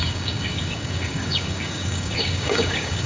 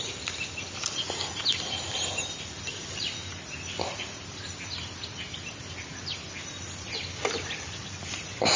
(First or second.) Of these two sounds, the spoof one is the first